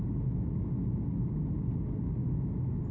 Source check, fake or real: real